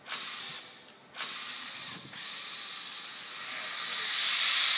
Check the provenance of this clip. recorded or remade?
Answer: recorded